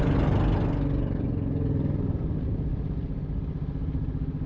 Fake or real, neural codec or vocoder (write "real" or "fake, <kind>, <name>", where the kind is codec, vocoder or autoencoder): real